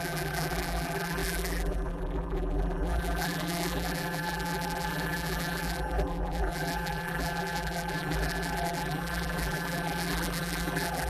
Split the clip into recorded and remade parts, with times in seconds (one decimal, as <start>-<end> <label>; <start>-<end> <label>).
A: 0.0-11.1 remade